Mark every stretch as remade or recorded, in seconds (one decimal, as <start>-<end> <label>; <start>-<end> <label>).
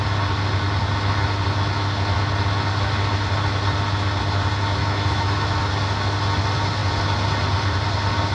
0.0-4.8 recorded; 4.8-5.7 remade; 5.7-8.3 recorded